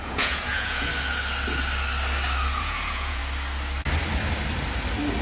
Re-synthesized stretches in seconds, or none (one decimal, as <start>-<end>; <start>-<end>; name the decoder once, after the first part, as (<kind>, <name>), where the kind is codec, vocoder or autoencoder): 0.0-0.9 (vocoder, Vocos); 2.6-3.2